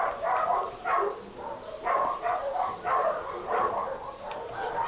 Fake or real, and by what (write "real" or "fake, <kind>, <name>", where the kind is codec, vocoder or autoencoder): real